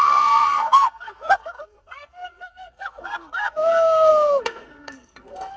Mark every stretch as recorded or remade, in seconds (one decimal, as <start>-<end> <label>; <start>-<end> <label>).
0.0-5.6 remade